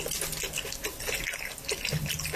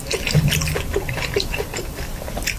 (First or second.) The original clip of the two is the first